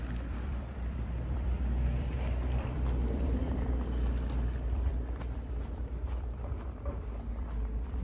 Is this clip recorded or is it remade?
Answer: remade